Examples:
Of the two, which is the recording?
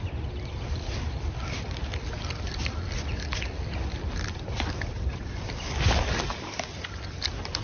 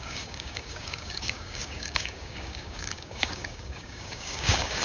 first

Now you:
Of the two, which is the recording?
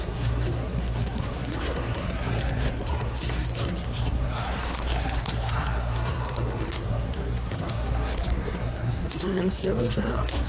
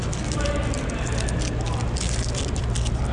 second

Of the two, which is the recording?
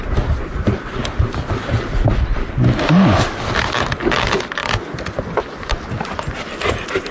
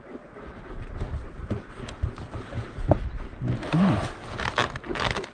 first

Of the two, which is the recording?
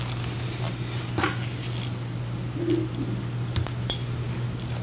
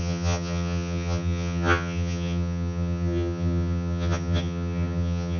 first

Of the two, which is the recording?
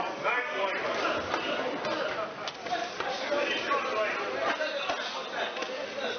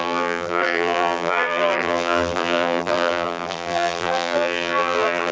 first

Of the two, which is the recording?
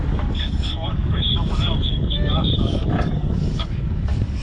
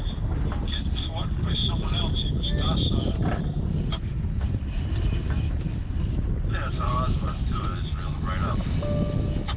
second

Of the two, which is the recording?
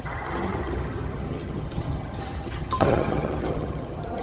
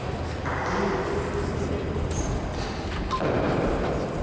second